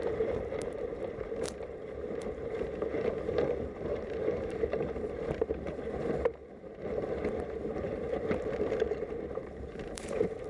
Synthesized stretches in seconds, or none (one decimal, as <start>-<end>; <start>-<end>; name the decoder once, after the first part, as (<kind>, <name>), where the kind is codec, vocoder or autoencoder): 0.0-7.2 (vocoder, BigVGAN v2); 9.3-10.5

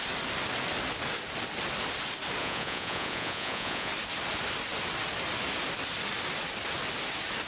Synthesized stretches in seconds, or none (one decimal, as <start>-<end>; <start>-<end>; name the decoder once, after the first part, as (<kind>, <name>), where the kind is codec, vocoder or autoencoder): 2.4-3.9 (vocoder, Vocos)

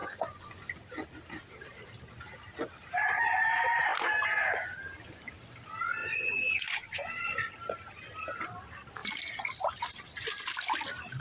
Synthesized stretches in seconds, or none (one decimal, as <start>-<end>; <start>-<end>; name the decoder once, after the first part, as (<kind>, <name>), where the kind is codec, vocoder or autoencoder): 0.0-0.7 (vocoder, Vocos); 6.0-7.5

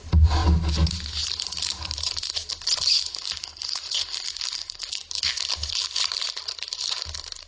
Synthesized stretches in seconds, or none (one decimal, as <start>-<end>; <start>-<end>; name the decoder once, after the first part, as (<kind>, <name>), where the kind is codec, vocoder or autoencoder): 3.1-4.9 (codec, SNAC)

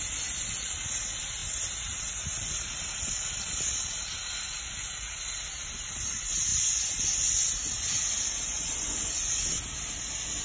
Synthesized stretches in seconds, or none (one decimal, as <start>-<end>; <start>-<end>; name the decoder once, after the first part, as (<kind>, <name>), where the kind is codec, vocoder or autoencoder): 8.5-9.3 (vocoder, Vocos)

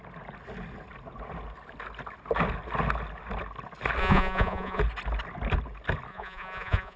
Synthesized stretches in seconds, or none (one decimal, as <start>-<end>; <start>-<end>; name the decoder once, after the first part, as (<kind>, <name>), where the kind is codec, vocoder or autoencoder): 4.0-4.8 (vocoder, Vocos); 6.1-7.0

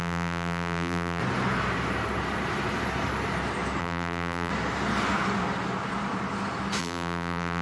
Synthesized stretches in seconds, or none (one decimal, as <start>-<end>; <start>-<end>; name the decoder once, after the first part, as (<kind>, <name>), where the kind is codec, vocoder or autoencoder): 0.0-1.2 (vocoder, BigVGAN v2); 3.8-4.5; 6.8-7.6

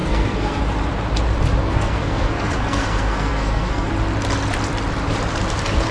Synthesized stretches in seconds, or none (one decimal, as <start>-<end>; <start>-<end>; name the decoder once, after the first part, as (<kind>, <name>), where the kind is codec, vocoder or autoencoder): 0.0-0.6 (codec, SNAC); 1.6-3.9